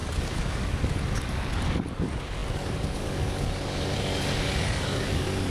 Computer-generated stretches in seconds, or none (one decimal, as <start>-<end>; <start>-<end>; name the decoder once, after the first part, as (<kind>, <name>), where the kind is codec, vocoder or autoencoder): 0.0-5.5 (codec, DAC)